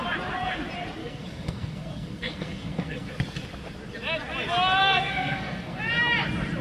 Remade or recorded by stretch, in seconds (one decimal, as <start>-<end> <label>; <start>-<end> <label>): 0.0-1.0 recorded; 1.0-3.1 remade; 3.1-4.8 recorded; 4.8-5.8 remade; 5.8-6.6 recorded